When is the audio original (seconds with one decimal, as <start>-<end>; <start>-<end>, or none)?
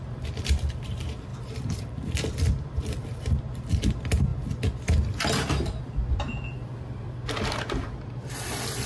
4.3-6.1